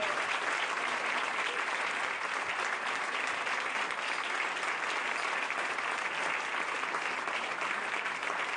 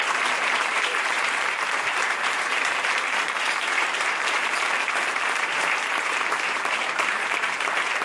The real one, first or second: first